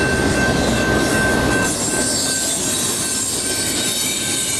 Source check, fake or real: real